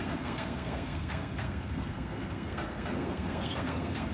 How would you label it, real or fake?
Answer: fake